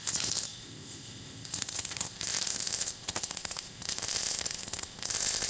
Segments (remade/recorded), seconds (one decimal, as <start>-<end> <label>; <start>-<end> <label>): 0.0-5.5 remade